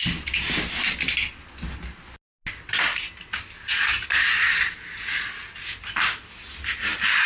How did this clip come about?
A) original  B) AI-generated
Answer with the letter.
A